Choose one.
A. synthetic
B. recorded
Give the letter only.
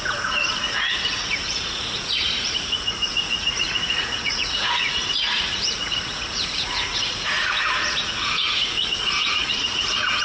A